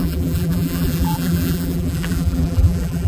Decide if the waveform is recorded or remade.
remade